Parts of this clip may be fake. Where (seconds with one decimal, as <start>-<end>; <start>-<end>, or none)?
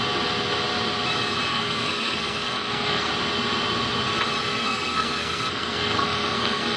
1.5-3.1; 4.4-6.8